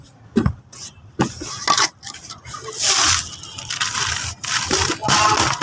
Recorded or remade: recorded